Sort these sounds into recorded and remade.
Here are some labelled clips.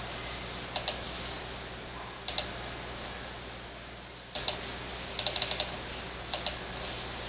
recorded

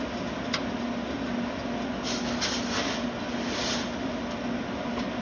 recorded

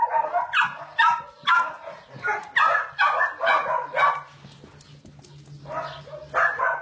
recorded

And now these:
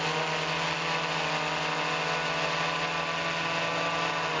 recorded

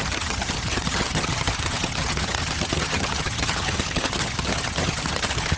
remade